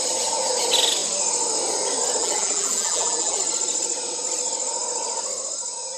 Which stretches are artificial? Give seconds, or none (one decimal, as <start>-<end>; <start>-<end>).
2.2-3.4